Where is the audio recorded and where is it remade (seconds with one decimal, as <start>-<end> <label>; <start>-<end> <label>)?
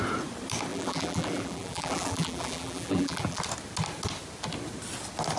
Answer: 0.0-0.7 recorded; 0.7-3.4 remade; 3.4-5.4 recorded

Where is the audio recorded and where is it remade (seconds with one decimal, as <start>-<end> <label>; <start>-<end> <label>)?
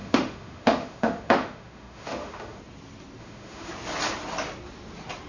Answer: 0.0-2.6 remade; 2.6-3.2 recorded; 3.2-3.7 remade; 3.7-5.3 recorded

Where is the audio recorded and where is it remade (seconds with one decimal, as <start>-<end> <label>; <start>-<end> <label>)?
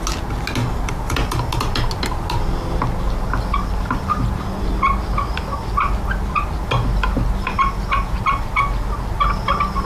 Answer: 0.0-0.6 recorded; 0.6-1.5 remade; 1.5-9.9 recorded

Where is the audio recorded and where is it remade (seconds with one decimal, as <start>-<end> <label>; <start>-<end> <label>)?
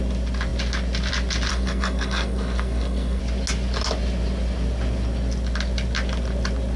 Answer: 0.0-1.5 recorded; 1.5-3.2 remade; 3.2-6.8 recorded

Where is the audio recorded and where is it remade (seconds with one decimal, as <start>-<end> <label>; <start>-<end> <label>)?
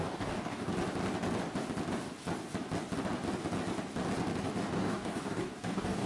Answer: 0.0-0.7 remade; 0.7-4.4 recorded; 4.4-6.1 remade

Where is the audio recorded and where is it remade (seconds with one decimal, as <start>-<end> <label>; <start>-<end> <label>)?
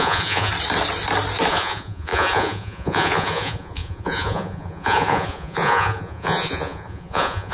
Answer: 0.0-0.5 remade; 0.5-1.5 recorded; 1.5-7.5 remade